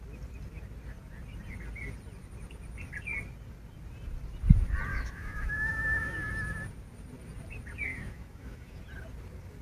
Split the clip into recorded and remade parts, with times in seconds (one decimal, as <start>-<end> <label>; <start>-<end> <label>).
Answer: 0.0-4.9 recorded; 4.9-6.3 remade; 6.3-7.9 recorded; 7.9-8.8 remade; 8.8-9.6 recorded